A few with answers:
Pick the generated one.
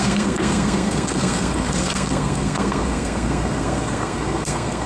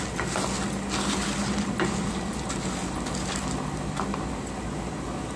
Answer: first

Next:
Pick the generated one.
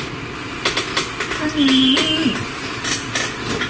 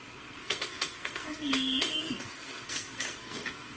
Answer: second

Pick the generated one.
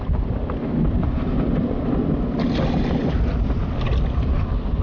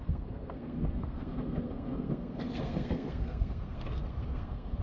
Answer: second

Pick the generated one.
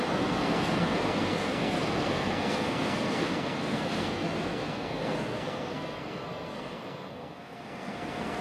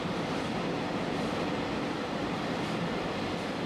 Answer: first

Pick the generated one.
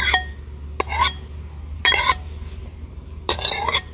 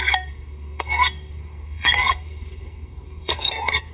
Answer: second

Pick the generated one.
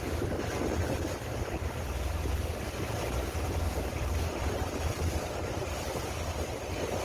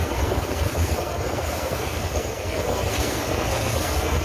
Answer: second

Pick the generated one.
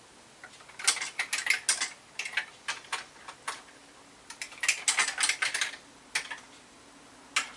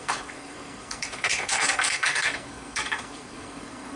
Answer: second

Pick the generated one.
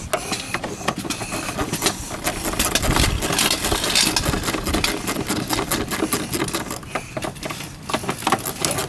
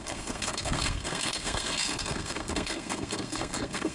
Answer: second